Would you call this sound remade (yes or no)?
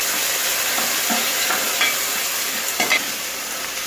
no